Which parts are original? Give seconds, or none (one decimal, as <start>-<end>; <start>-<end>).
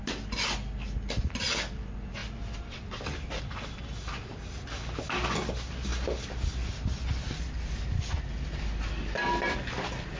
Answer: 0.0-2.2; 3.5-10.2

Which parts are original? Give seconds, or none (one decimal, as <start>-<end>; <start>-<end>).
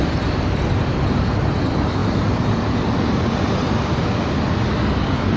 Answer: 0.0-5.4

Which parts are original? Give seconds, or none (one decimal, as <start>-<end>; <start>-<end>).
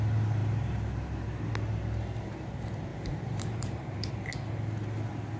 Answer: 0.0-2.9; 4.1-5.4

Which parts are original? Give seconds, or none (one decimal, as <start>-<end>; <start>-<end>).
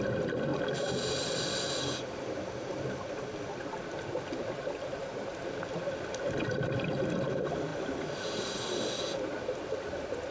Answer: 0.0-10.3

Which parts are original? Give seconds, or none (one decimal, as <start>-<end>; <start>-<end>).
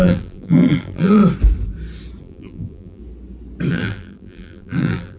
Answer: 1.2-2.2; 3.0-3.7